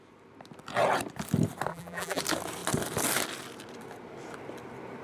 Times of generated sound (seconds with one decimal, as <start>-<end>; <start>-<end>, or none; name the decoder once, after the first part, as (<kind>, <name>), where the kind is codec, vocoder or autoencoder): 1.7-2.2 (vocoder, BigVGAN v2)